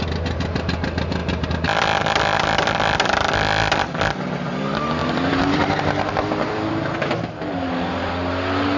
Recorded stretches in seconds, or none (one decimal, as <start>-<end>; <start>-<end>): 0.0-5.0; 6.7-8.8